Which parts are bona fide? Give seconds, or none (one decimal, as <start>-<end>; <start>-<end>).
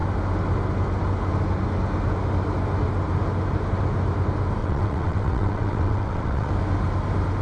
0.0-4.6; 6.5-7.4